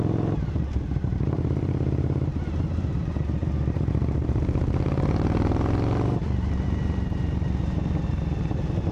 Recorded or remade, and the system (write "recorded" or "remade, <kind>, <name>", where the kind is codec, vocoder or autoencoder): remade, vocoder, BigVGAN v2